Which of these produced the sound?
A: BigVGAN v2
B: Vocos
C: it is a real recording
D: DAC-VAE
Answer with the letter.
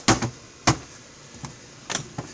C